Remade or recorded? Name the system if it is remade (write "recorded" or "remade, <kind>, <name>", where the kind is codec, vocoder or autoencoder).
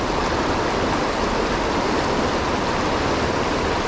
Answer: recorded